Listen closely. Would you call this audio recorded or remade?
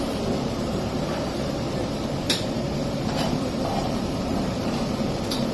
remade